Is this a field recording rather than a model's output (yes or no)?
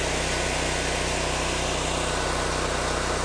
yes